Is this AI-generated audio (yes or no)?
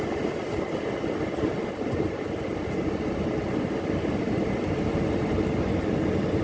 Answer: no